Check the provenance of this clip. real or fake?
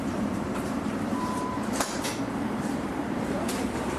fake